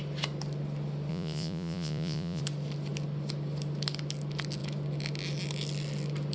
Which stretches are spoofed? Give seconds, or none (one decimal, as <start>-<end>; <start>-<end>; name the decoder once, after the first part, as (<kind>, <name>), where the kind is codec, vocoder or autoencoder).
1.1-2.4 (vocoder, Vocos)